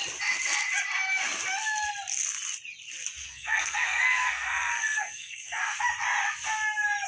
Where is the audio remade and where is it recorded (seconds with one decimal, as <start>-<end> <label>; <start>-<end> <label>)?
0.0-3.2 recorded; 3.2-5.8 remade; 5.8-7.1 recorded

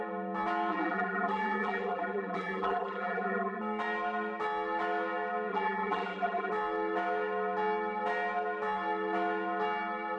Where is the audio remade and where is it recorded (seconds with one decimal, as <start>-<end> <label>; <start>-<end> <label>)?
0.0-0.7 recorded; 0.7-3.6 remade; 3.6-5.5 recorded; 5.5-6.5 remade; 6.5-10.2 recorded